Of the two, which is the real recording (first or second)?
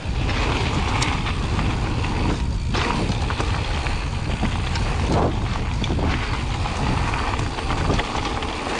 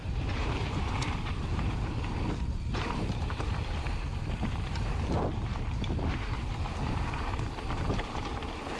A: first